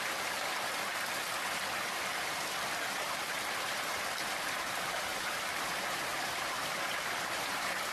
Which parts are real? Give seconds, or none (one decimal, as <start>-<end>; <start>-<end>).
0.0-5.1